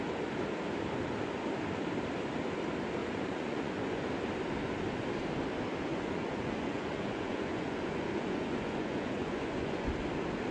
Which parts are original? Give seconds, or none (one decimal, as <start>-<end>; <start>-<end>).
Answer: 0.0-3.0; 4.1-5.9; 9.9-10.5